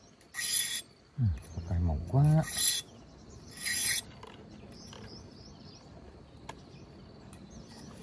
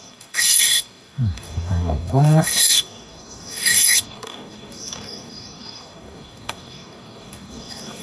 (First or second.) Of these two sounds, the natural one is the first